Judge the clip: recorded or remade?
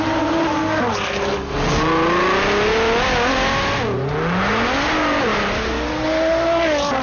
recorded